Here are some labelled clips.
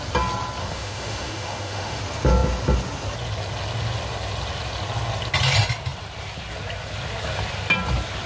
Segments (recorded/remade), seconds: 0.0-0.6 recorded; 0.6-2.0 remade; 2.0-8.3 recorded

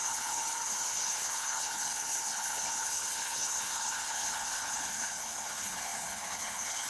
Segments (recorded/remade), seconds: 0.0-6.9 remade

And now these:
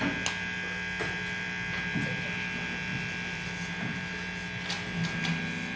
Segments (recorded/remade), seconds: 0.0-5.8 recorded

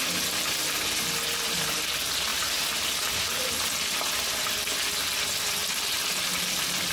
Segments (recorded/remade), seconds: 0.0-6.9 recorded